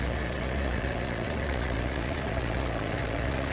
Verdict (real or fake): fake